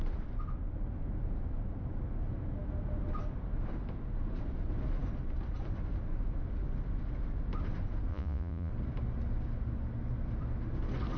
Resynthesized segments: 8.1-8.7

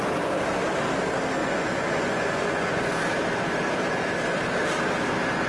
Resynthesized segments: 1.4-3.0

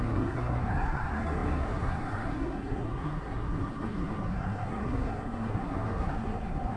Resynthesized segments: 0.0-6.8

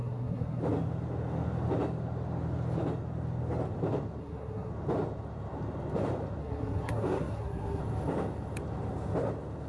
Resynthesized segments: 0.0-0.6; 4.2-4.7; 6.4-7.8

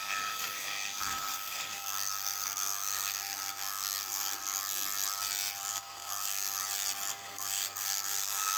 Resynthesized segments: 0.0-4.4; 5.7-6.6; 7.1-8.6

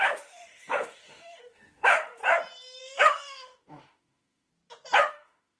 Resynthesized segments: 0.0-2.2; 2.8-4.5; 5.1-5.6